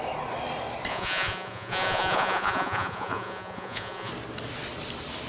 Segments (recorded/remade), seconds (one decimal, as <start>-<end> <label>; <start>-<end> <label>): 0.0-0.9 recorded; 0.9-4.1 remade; 4.1-5.3 recorded